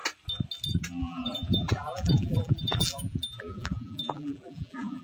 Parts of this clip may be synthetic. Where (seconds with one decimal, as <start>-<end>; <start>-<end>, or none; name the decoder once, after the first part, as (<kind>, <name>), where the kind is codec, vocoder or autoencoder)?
1.0-5.0 (vocoder, BigVGAN v2)